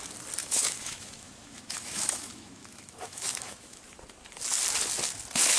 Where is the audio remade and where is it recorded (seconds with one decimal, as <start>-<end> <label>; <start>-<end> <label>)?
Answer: 0.0-0.4 recorded; 0.4-3.8 remade; 3.8-5.6 recorded